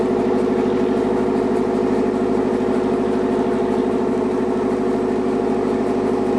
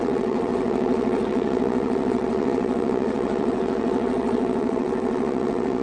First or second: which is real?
first